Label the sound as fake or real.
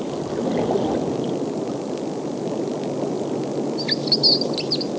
real